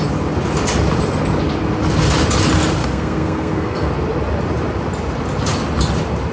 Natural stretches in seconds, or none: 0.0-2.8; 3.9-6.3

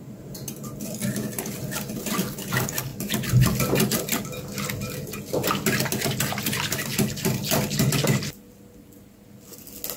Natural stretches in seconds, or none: 0.0-10.0

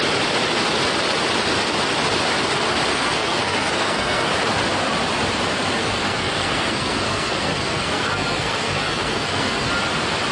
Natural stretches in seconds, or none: 0.0-2.9; 4.3-5.8; 9.7-10.3